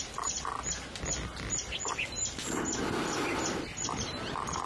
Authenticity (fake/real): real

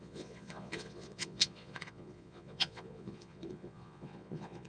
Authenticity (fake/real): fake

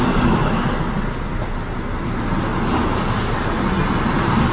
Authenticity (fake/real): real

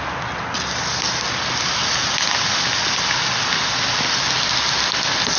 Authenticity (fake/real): real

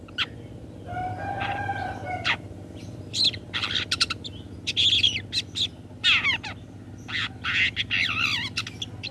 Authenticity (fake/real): real